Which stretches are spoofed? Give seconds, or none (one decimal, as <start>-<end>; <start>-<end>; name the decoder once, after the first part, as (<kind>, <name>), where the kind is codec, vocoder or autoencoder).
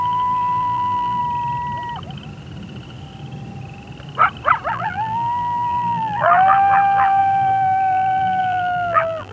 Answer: 0.0-1.2 (vocoder, BigVGAN v2); 4.7-9.3